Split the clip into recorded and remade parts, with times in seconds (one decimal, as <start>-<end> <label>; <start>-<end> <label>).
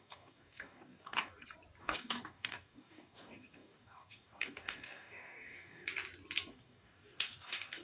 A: 0.0-1.3 remade; 1.3-1.8 recorded; 1.8-5.9 remade; 5.9-6.5 recorded; 6.5-7.8 remade